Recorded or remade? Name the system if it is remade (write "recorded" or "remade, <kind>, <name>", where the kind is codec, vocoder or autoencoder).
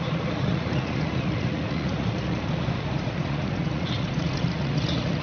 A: remade, vocoder, Vocos